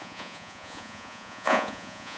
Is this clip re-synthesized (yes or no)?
yes